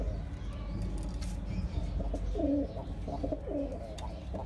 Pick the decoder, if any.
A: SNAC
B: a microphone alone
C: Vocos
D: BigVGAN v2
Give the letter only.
B